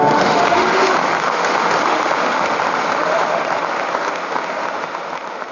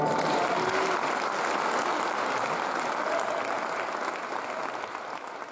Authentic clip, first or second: second